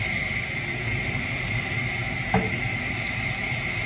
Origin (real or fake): real